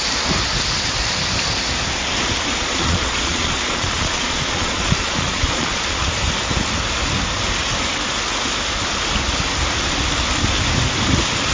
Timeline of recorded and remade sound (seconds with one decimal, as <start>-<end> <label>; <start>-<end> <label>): 0.0-2.6 recorded; 2.6-6.1 remade; 6.1-11.5 recorded

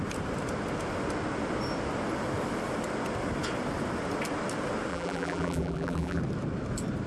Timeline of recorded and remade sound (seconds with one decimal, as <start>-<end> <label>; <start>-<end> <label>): 0.0-4.9 recorded; 4.9-6.2 remade; 6.2-7.1 recorded

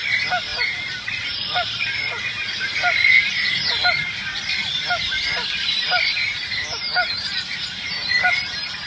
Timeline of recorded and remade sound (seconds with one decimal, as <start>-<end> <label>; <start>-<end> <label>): 0.0-8.9 recorded

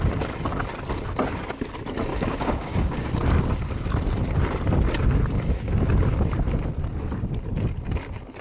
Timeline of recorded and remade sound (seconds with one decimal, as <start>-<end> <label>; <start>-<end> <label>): 0.0-2.1 recorded; 2.1-3.1 remade; 3.1-8.4 recorded

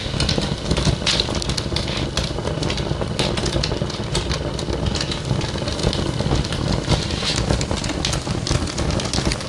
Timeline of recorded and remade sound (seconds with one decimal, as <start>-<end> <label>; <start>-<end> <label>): 0.0-9.5 recorded